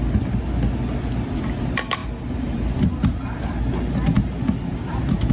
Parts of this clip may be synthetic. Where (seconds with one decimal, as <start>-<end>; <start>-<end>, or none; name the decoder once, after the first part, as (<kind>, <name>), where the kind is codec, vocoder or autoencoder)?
none